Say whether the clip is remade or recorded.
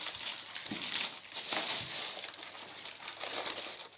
recorded